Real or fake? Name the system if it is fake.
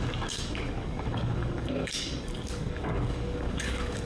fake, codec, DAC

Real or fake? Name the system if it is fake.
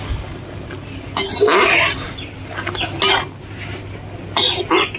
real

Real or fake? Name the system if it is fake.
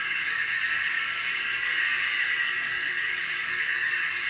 fake, codec, DAC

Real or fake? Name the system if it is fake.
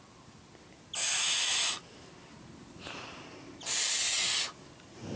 real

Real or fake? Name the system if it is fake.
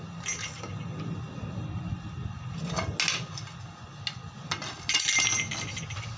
real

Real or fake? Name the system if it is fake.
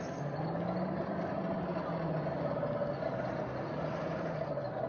real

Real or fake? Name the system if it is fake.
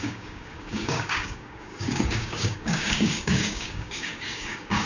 fake, codec, DAC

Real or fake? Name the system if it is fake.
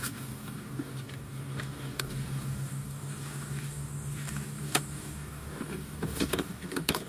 fake, codec, DAC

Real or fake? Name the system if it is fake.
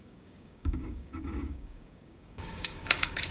fake, codec, DAC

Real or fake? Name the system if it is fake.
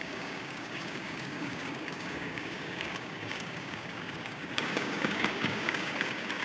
fake, codec, DAC